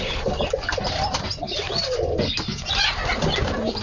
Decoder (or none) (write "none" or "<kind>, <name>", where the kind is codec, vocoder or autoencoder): none